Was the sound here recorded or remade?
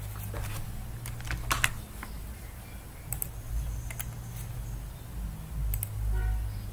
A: recorded